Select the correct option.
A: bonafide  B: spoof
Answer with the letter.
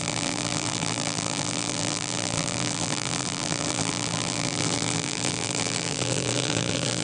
B